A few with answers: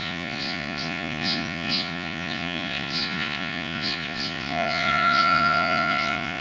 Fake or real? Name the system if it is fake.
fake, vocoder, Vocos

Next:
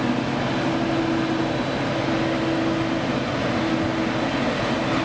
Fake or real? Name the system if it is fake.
real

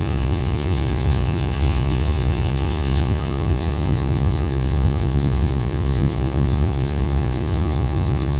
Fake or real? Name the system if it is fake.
fake, vocoder, Vocos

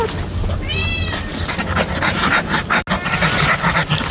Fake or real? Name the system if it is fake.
real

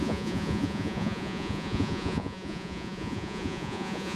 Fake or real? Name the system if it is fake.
fake, vocoder, Vocos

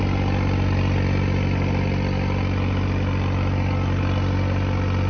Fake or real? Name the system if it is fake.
real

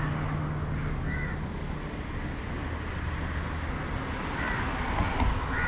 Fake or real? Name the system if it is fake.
real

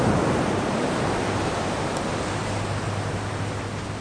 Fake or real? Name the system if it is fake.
real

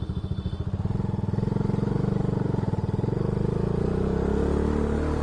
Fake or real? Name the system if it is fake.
real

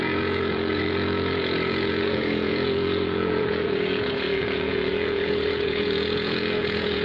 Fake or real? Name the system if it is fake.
fake, vocoder, Vocos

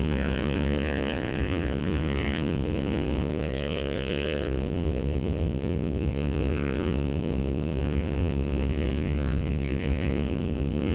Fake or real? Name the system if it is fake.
fake, vocoder, Vocos